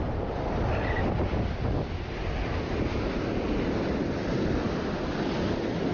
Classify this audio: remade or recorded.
recorded